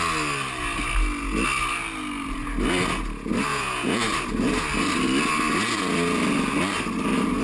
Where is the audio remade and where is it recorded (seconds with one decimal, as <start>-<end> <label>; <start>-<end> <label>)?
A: 0.0-3.5 recorded; 3.5-4.0 remade; 4.0-7.4 recorded